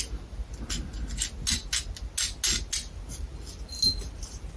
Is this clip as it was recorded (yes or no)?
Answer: yes